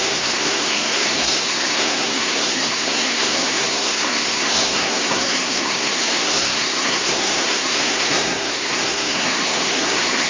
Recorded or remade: remade